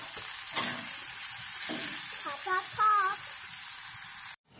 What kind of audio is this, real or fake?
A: real